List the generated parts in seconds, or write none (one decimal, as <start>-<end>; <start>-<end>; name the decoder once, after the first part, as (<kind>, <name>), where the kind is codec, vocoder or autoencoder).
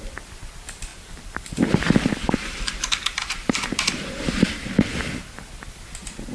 0.9-1.7 (vocoder, BigVGAN v2); 2.2-4.7